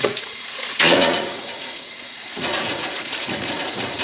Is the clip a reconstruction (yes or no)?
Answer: yes